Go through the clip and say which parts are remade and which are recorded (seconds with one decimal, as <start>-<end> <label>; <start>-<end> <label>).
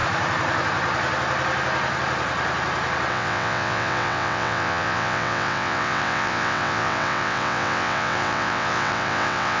0.0-3.1 recorded; 3.1-9.6 remade